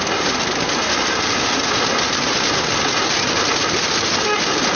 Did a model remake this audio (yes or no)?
no